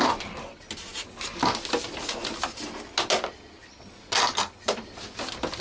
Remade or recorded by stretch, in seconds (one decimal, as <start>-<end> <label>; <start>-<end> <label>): 0.0-5.6 recorded